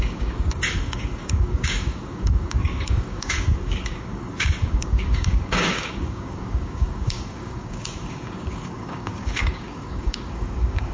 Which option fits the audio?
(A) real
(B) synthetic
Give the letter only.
B